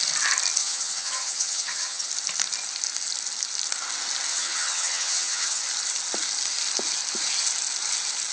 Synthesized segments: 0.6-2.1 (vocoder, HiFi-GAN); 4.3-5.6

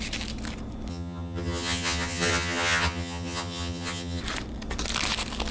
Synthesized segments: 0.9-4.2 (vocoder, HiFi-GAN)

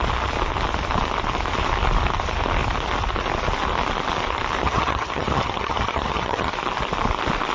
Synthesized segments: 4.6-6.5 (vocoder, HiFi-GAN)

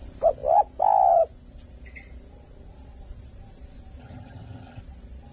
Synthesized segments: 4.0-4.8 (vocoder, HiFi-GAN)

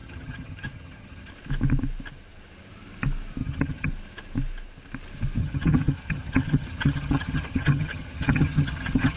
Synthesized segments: 0.0-1.3 (vocoder, HiFi-GAN); 3.4-3.9; 5.4-9.2

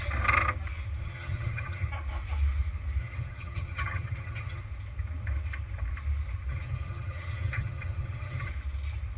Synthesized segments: 1.0-1.9 (vocoder, HiFi-GAN); 3.0-4.6; 6.5-8.5

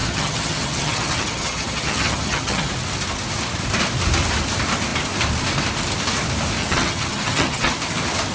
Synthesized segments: 0.0-2.7 (vocoder, HiFi-GAN); 6.6-7.7